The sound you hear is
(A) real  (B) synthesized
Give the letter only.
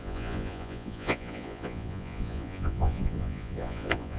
B